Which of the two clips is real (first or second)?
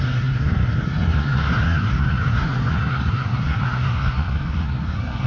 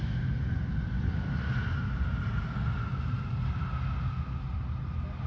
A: second